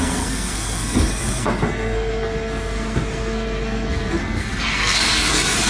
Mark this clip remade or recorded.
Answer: remade